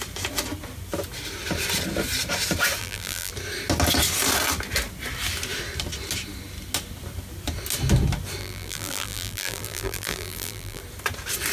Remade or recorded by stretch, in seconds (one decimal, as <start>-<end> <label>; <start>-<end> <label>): 0.0-2.8 recorded; 2.8-3.3 remade; 3.3-8.4 recorded; 8.4-10.8 remade; 10.8-11.5 recorded